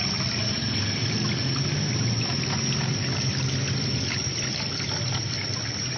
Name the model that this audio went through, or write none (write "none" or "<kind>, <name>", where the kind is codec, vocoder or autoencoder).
none